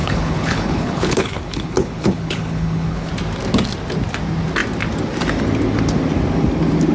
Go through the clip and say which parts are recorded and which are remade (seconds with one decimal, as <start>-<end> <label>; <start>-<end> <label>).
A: 0.0-3.1 remade; 3.1-6.9 recorded